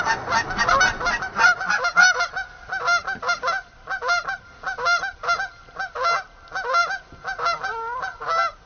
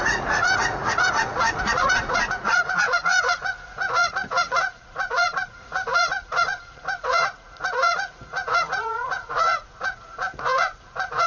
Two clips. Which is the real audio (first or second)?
first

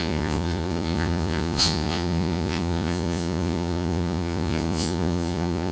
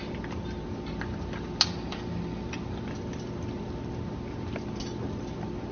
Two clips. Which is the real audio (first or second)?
second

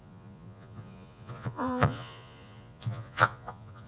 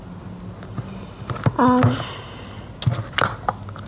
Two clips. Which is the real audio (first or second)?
second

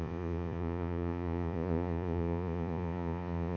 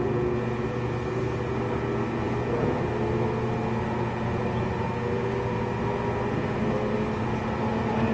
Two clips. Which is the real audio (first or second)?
second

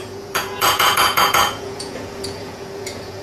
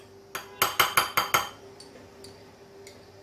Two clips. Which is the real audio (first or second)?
second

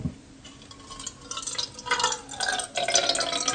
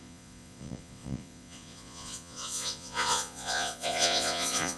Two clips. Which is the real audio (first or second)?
first